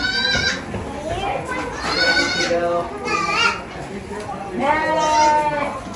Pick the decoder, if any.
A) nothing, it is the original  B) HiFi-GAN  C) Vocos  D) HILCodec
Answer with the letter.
A